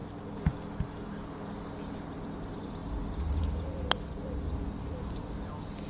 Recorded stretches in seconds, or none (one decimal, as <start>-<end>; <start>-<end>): 0.0-5.9